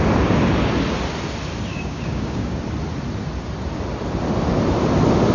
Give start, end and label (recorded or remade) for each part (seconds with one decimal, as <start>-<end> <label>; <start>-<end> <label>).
0.0-1.7 recorded; 1.7-2.6 remade; 2.6-5.3 recorded